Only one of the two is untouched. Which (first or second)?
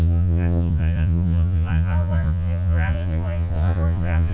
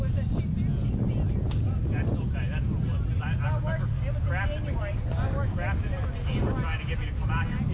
second